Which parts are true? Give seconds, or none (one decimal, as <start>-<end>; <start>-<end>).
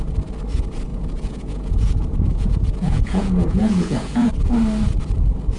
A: 0.0-0.9; 4.3-5.6